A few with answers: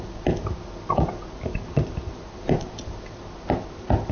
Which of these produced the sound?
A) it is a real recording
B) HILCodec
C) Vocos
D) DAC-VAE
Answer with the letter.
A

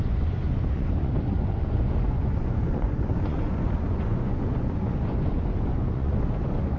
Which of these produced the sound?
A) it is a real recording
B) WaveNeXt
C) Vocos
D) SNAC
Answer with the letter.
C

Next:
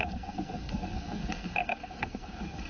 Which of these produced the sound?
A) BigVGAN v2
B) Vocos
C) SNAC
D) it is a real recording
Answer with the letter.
C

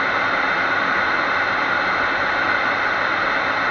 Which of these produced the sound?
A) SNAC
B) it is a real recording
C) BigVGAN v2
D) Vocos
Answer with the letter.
B